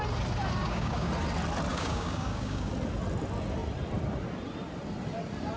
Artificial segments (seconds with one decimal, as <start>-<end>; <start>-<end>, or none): 0.6-1.1; 1.7-2.7